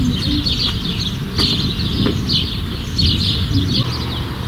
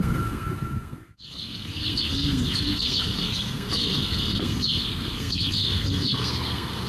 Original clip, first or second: first